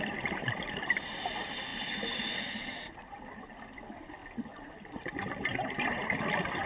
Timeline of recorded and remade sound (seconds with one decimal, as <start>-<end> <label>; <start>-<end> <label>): 0.0-6.7 recorded

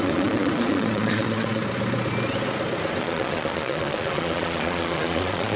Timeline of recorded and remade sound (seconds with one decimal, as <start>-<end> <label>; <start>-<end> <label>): 0.0-1.6 remade; 1.6-3.0 recorded; 3.0-5.6 remade

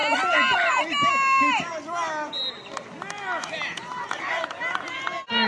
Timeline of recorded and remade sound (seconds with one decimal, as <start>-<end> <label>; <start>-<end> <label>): 0.0-5.5 recorded

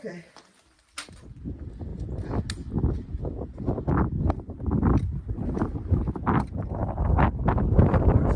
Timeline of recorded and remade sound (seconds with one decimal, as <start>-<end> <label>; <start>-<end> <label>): 0.0-8.4 recorded

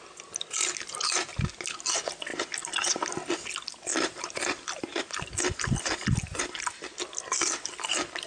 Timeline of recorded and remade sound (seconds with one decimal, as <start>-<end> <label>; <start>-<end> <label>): 0.0-8.3 recorded